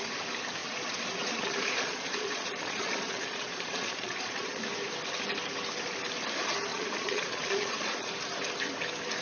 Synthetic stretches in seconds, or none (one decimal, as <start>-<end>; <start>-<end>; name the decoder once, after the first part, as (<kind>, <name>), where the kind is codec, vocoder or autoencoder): 0.6-4.6 (vocoder, Vocos); 6.7-8.1